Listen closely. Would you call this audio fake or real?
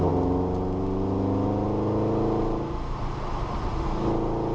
real